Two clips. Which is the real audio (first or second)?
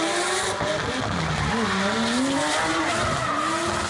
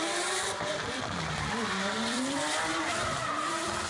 first